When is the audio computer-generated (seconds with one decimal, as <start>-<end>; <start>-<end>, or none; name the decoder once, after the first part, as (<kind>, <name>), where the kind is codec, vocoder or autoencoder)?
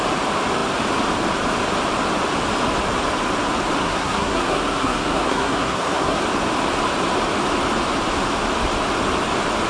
3.8-6.2 (codec, SNAC)